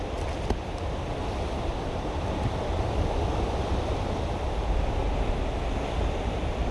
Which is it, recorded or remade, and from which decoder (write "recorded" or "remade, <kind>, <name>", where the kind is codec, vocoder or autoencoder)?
recorded